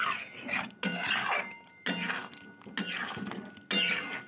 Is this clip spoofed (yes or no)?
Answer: no